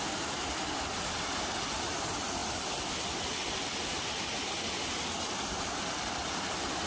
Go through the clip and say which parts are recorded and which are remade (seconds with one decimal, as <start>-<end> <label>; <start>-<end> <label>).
0.0-6.9 recorded